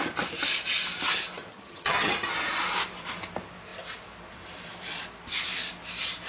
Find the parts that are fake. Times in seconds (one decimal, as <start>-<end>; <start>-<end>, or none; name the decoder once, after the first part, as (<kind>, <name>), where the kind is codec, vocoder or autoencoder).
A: 1.5-2.1 (vocoder, HiFi-GAN)